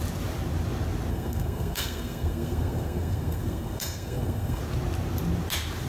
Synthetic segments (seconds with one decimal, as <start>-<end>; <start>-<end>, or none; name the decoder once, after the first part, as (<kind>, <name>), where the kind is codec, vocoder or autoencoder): 1.1-4.6 (codec, SNAC)